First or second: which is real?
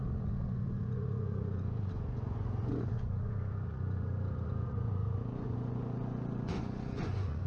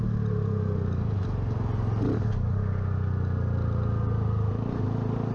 second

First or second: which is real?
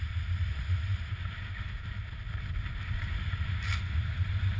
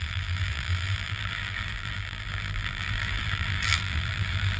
first